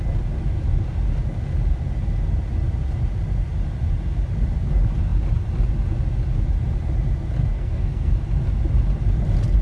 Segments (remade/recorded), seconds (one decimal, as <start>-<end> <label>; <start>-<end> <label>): 0.0-7.4 recorded; 7.4-8.1 remade; 8.1-9.6 recorded